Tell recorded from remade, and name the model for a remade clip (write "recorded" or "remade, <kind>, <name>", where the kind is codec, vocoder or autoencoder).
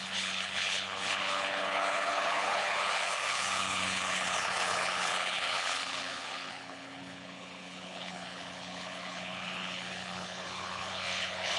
remade, codec, HILCodec